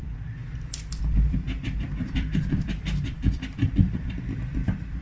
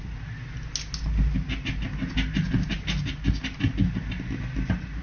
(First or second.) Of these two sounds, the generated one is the first